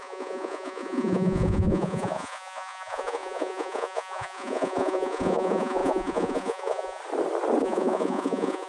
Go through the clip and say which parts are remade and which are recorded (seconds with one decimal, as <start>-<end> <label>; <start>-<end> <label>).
0.0-7.0 remade; 7.0-7.6 recorded; 7.6-8.7 remade